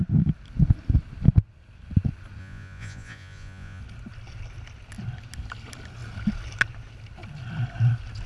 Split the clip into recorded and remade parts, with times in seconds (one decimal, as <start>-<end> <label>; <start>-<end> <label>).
0.0-2.4 recorded; 2.4-3.8 remade; 3.8-8.3 recorded